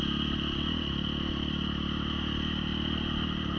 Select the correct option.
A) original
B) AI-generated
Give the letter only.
A